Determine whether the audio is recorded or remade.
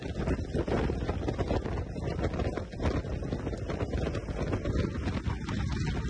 recorded